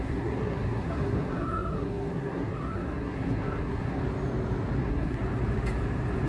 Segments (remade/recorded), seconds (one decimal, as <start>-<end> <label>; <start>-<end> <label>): 0.0-4.0 remade; 4.0-4.8 recorded; 4.8-5.2 remade; 5.2-6.3 recorded